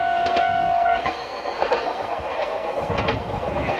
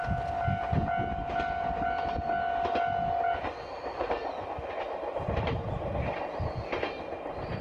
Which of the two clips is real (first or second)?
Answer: second